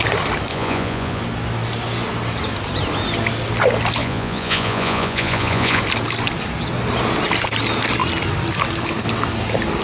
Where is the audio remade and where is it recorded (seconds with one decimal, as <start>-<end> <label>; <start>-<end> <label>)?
0.0-0.5 recorded; 0.5-1.2 remade; 1.2-4.0 recorded; 4.0-5.8 remade; 5.8-9.8 recorded